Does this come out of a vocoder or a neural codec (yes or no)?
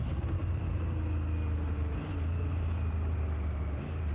no